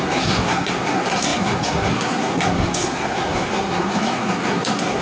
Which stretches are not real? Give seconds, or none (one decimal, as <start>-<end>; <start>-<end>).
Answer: 0.0-5.0